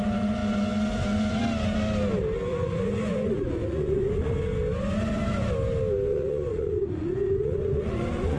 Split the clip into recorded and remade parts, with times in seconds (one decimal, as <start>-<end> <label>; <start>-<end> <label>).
0.0-2.5 recorded; 2.5-4.3 remade; 4.3-6.1 recorded; 6.1-8.4 remade